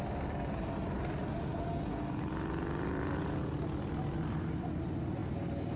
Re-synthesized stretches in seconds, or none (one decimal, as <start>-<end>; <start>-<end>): none